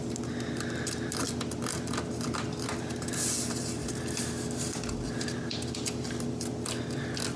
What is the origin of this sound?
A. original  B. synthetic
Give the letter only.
A